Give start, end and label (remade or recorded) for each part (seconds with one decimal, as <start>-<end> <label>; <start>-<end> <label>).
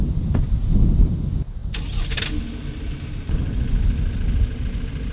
0.0-5.1 recorded